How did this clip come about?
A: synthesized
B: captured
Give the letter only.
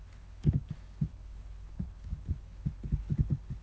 A